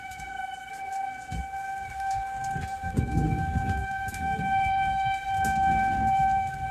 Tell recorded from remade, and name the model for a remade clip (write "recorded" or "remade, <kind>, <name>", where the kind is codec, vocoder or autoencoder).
remade, codec, SNAC